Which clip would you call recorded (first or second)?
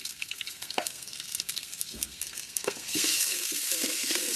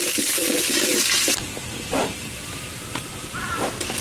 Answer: second